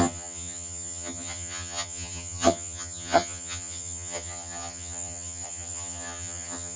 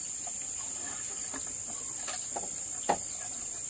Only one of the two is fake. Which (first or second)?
first